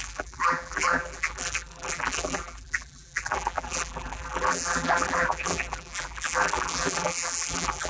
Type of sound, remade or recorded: remade